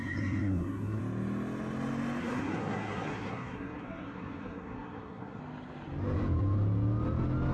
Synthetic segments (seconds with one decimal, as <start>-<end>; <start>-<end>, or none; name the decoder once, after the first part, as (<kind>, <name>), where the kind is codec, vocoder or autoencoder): 0.0-1.0 (codec, SNAC); 2.2-5.4